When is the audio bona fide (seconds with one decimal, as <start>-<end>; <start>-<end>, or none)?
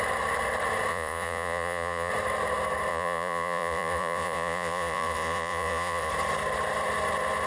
0.0-0.9; 2.1-2.9; 6.1-7.5